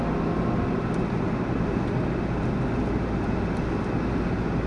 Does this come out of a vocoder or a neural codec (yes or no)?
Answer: no